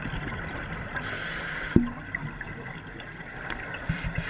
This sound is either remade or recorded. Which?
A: recorded